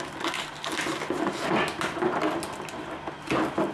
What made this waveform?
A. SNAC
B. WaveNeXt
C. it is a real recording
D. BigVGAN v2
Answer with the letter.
C